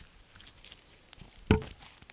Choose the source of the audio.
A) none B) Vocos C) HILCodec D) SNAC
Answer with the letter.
A